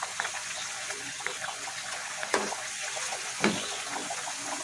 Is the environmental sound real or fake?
fake